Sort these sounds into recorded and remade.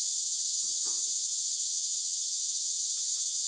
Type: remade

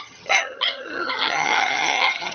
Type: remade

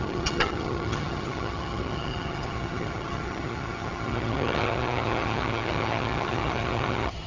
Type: remade